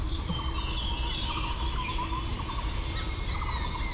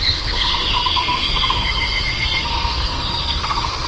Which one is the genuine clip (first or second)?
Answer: first